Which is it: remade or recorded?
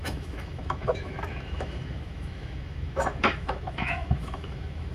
remade